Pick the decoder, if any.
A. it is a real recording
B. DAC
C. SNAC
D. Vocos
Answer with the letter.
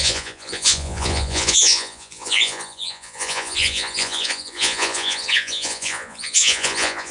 D